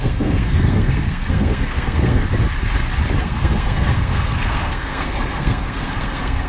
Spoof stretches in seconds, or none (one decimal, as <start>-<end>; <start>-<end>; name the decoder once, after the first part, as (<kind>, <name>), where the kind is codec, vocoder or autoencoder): 0.0-2.2 (codec, SNAC); 3.2-6.5